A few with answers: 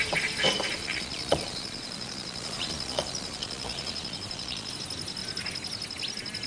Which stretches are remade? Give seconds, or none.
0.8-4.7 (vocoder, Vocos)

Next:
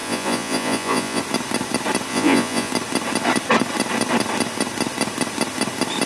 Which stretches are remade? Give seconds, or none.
0.0-1.2 (vocoder, Vocos); 2.1-2.7